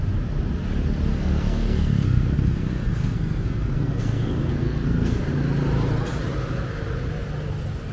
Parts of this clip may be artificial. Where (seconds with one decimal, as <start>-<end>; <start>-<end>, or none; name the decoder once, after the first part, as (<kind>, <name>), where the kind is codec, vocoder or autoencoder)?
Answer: 1.1-5.2 (codec, SNAC)